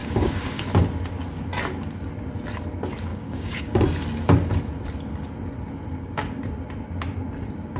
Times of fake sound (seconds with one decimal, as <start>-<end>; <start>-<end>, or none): 0.0-0.6; 3.1-3.7; 5.9-6.4